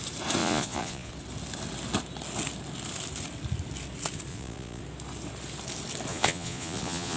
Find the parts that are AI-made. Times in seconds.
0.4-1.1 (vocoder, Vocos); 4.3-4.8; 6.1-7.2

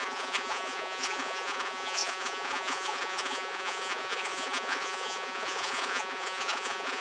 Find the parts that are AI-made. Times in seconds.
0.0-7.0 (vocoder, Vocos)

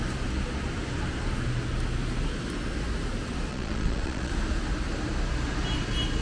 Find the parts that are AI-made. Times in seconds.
3.5-4.3 (vocoder, Vocos)